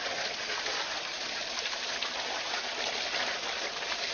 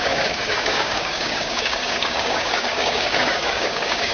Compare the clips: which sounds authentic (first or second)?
first